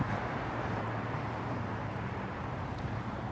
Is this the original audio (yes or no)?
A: no